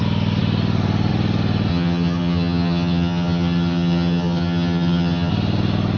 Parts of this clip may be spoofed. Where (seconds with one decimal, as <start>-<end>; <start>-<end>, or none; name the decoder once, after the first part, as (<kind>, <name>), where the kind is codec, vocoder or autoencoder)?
1.7-5.3 (vocoder, HiFi-GAN)